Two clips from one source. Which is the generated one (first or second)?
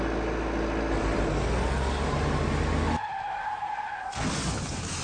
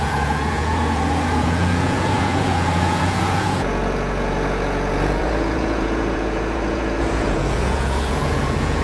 second